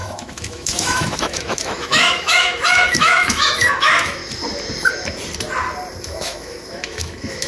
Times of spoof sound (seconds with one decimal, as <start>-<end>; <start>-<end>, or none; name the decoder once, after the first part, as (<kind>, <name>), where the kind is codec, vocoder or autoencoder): 0.0-4.2 (autoencoder, DAC-VAE); 6.0-7.5